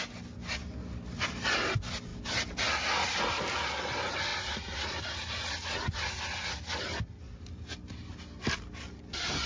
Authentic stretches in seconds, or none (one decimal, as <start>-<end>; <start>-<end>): 0.0-9.5